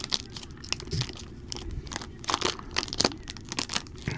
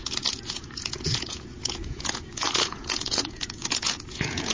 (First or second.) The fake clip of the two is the second